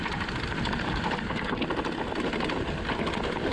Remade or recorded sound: recorded